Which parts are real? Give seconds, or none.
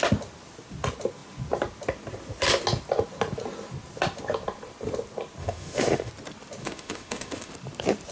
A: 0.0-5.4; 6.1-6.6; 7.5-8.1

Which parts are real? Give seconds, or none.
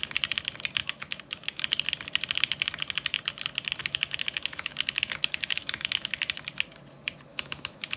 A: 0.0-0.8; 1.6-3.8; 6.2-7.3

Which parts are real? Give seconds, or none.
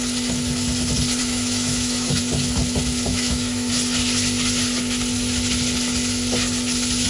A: 0.0-1.2; 2.2-3.1; 3.7-7.1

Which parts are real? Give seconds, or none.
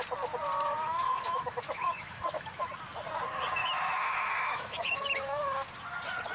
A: 0.0-0.9; 2.7-3.6; 5.4-6.3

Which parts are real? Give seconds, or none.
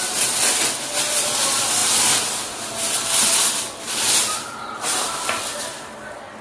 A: 0.0-6.4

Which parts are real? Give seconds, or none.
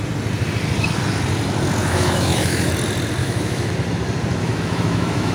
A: 0.0-1.8; 2.7-3.2; 3.7-4.4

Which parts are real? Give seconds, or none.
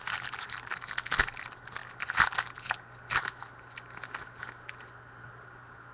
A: 0.0-5.9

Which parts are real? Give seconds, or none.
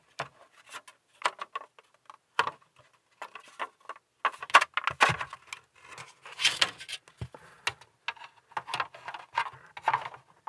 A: 0.0-10.5